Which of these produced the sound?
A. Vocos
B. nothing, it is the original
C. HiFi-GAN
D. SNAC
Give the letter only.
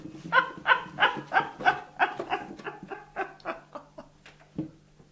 B